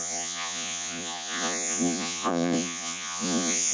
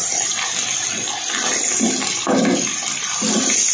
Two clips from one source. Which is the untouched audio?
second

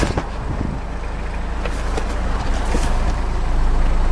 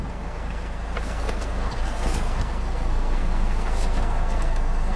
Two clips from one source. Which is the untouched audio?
first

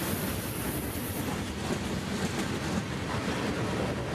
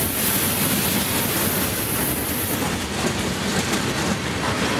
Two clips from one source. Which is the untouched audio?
second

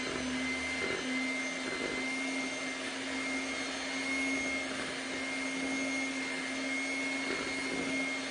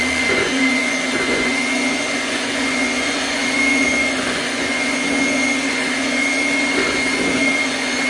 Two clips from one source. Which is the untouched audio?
first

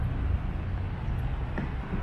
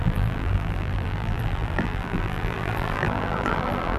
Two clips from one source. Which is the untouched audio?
first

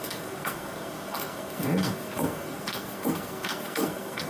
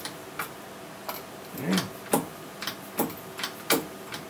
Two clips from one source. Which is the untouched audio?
second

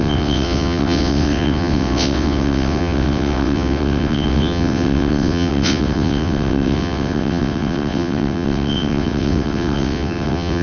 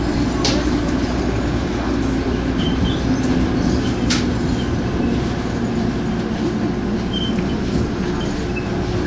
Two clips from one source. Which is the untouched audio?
second